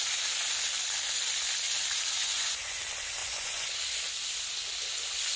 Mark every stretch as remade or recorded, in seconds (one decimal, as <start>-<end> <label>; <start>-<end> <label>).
0.0-2.2 recorded; 2.2-2.8 remade; 2.8-3.2 recorded; 3.2-3.8 remade; 3.8-5.4 recorded